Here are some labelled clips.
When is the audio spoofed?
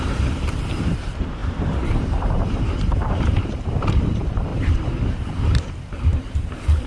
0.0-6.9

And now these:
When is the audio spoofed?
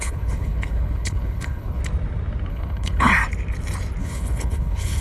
0.0-1.8; 2.5-3.1; 4.0-5.0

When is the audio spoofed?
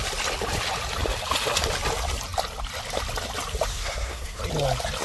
3.7-4.4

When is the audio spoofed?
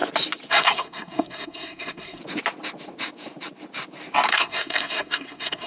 0.5-2.2; 4.3-5.7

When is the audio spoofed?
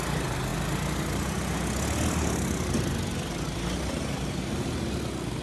none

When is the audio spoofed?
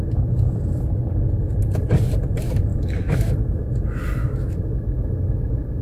2.7-3.6; 4.2-5.8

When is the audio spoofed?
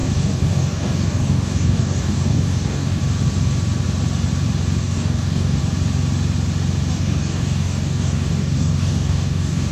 0.0-3.0; 4.8-5.6; 6.9-9.7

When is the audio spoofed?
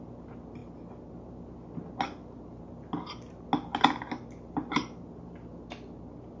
none